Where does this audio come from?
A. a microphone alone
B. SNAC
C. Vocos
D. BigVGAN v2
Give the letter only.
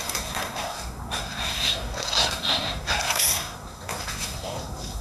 B